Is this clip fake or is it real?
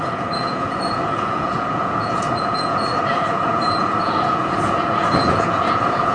fake